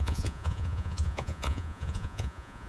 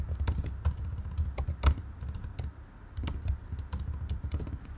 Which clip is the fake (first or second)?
first